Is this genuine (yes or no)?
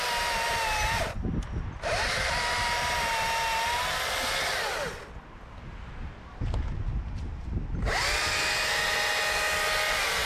yes